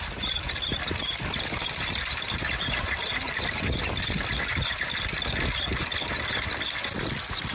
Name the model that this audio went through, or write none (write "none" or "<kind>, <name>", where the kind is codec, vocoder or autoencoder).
none